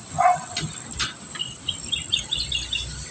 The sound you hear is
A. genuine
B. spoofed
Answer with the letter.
A